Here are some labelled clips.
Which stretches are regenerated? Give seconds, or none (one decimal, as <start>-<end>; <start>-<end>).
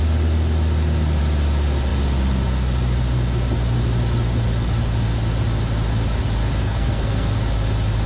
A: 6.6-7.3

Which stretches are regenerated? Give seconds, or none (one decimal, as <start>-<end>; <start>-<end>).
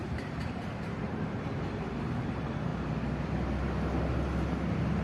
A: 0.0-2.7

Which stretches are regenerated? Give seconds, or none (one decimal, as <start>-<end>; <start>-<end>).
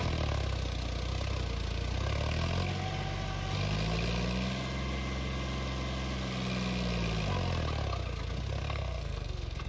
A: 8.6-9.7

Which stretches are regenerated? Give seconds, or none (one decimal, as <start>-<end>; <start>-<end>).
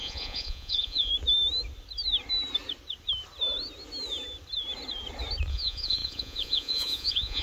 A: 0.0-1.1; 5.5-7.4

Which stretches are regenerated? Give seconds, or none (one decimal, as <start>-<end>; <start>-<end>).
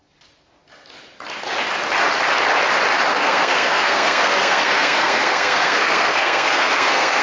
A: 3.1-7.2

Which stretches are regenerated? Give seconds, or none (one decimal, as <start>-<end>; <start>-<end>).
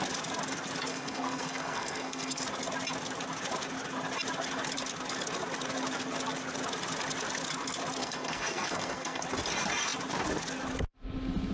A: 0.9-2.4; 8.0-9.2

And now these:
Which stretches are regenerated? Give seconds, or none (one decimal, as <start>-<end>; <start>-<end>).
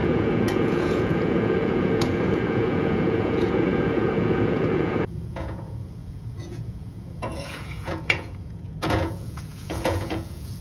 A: 0.0-10.6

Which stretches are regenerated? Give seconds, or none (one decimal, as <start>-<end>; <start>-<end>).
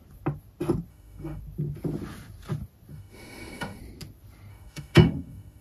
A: 0.9-1.4; 2.9-3.8; 4.5-5.6